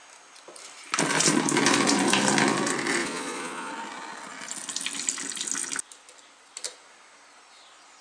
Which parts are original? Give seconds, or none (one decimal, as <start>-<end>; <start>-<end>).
0.0-3.0; 3.7-8.0